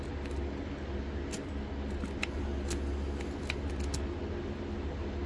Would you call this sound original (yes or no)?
yes